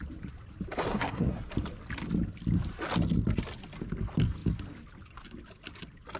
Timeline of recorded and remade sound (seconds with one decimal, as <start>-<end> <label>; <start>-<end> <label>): 0.0-0.9 recorded; 0.9-1.5 remade; 1.5-6.2 recorded